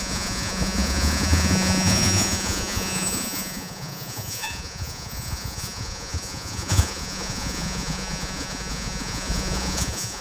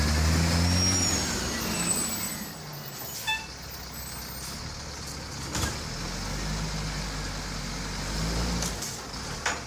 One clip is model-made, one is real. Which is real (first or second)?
second